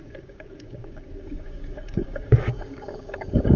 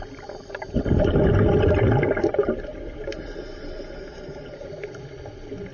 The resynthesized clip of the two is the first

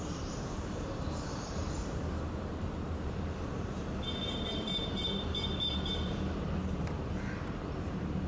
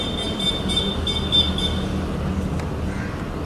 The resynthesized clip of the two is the first